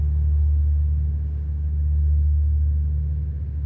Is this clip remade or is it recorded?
recorded